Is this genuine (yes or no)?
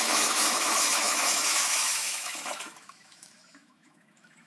no